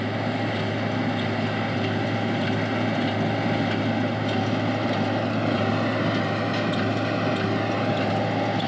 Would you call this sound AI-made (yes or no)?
no